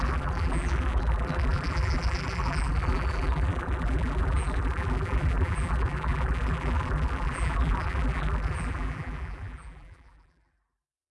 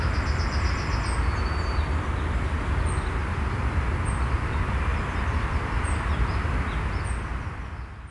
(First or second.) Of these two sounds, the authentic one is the second